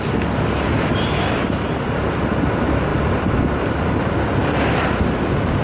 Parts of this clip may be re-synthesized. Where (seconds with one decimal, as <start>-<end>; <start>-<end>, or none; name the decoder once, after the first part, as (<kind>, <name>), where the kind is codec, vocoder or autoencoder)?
2.9-4.1 (vocoder, BigVGAN v2)